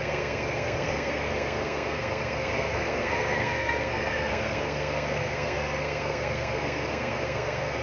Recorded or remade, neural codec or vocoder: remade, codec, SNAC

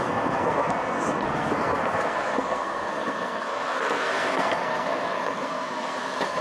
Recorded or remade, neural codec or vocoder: remade, codec, SNAC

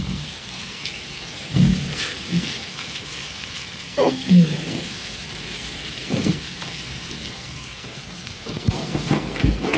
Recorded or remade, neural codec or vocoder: remade, codec, SNAC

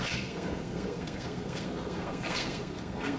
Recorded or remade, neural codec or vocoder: remade, codec, SNAC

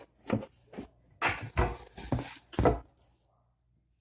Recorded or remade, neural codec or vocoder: recorded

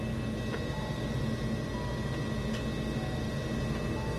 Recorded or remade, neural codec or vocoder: recorded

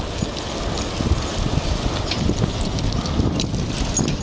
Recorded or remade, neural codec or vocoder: recorded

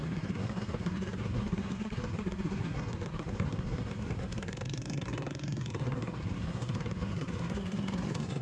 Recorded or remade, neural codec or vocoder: remade, codec, SNAC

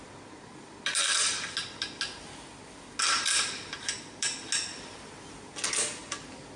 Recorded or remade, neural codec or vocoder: recorded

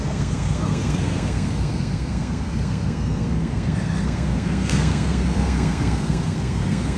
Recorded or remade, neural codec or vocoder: remade, codec, SNAC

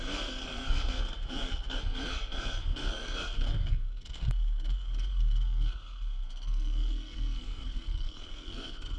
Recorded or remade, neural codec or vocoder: remade, codec, SNAC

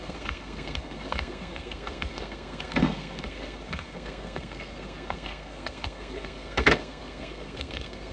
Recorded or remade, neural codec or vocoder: remade, codec, SNAC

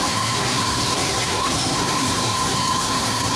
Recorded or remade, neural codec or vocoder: remade, codec, SNAC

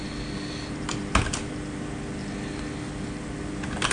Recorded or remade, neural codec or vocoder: recorded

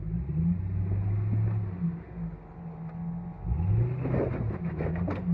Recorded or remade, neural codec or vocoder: recorded